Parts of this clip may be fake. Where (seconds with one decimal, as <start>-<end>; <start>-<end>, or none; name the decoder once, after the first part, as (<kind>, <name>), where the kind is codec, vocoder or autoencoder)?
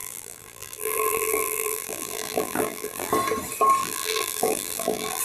0.0-3.1 (vocoder, BigVGAN v2); 3.8-5.2